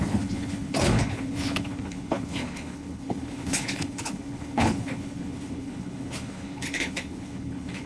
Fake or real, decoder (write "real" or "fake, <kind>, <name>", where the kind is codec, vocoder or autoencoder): fake, codec, HILCodec